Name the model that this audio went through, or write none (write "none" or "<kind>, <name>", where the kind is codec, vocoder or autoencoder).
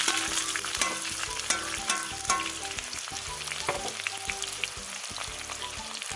none